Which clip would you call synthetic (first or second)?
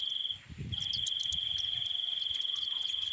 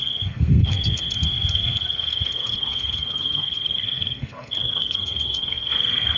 second